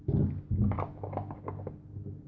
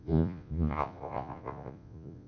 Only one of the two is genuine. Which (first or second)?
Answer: first